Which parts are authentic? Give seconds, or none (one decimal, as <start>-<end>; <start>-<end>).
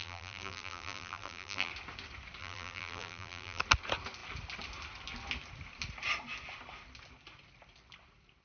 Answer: 1.7-2.4; 3.6-8.4